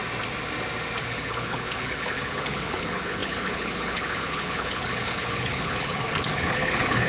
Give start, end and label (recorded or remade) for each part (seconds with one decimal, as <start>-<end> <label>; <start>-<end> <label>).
0.0-1.0 recorded; 1.0-7.1 remade